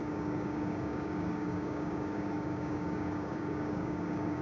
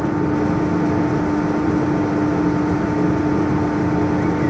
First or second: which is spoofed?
first